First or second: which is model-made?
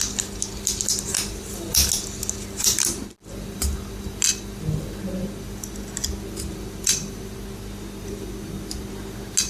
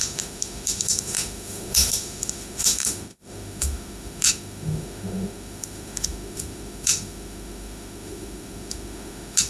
second